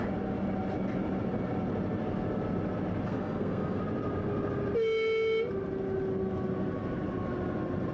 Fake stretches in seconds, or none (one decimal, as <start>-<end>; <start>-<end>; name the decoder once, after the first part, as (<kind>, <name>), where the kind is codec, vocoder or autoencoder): 3.1-3.8 (codec, SNAC)